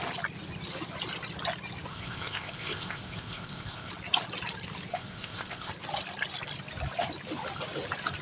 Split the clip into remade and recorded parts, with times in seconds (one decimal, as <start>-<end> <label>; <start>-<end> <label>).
0.0-1.9 recorded; 1.9-3.9 remade; 3.9-4.9 recorded; 4.9-5.7 remade; 5.7-8.2 recorded